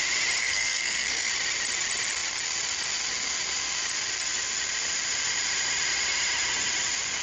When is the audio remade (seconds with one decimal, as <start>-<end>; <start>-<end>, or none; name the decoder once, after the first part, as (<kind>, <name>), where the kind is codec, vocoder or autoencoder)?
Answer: 0.4-1.3 (codec, SNAC)